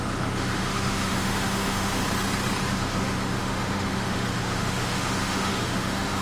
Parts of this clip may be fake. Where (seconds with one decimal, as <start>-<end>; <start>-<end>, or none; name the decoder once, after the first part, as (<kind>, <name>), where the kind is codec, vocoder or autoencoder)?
0.0-2.0 (autoencoder, DAC-VAE); 2.6-6.2